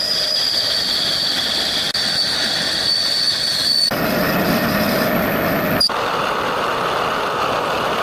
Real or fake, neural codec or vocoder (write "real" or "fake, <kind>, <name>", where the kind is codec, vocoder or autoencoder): real